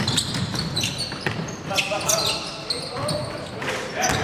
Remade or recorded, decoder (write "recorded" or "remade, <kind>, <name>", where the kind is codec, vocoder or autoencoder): recorded